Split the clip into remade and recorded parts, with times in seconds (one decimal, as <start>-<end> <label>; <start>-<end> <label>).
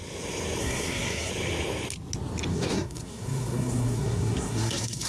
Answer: 0.0-0.6 recorded; 0.6-1.3 remade; 1.3-2.5 recorded; 2.5-5.1 remade